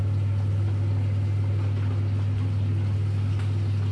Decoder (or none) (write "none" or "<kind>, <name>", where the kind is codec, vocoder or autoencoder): none